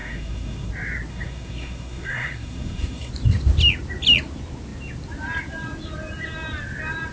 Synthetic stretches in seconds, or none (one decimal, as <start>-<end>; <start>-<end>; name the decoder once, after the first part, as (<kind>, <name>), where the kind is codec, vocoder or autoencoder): 0.0-0.7 (codec, SNAC); 1.1-3.1